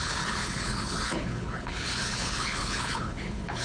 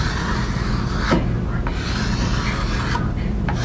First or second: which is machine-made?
first